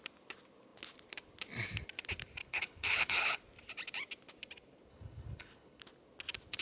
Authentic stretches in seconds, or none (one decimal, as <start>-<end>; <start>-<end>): 0.0-2.4; 3.4-4.9; 5.8-6.6